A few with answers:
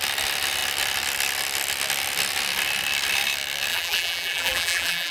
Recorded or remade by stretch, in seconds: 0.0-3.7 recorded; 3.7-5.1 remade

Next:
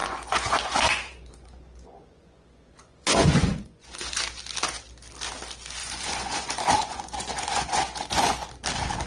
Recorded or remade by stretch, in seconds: 0.0-4.2 remade; 4.2-5.8 recorded; 5.8-8.5 remade; 8.5-9.1 recorded

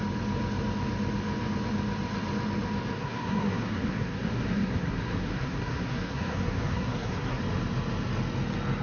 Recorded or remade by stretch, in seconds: 0.0-3.0 recorded; 3.0-7.4 remade; 7.4-8.8 recorded

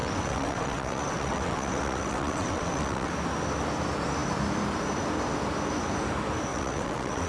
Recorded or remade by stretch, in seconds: 0.0-3.1 remade; 3.1-6.5 recorded; 6.5-7.3 remade

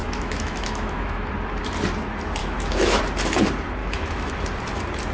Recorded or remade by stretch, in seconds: 0.0-1.3 remade; 1.3-2.4 recorded; 2.4-3.0 remade; 3.0-3.8 recorded; 3.8-4.3 remade; 4.3-5.1 recorded